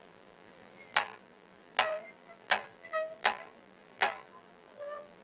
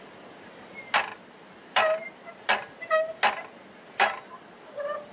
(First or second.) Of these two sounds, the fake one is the first